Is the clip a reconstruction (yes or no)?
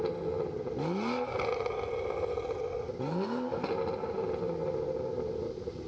no